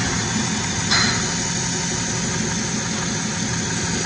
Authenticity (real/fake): real